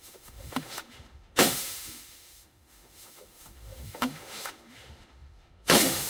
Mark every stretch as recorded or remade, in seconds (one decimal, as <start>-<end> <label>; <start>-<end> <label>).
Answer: 0.0-6.1 remade